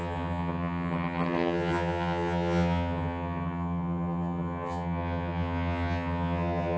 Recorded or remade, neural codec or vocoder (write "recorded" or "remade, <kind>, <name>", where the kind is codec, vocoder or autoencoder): remade, vocoder, HiFi-GAN